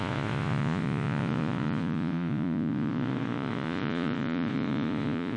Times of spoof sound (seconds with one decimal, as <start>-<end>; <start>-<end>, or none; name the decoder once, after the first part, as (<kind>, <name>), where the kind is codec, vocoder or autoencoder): 0.0-5.4 (vocoder, Vocos)